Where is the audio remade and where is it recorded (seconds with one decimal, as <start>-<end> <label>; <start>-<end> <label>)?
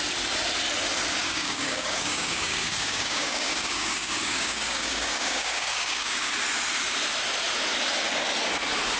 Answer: 0.0-1.2 recorded; 1.2-6.3 remade; 6.3-9.0 recorded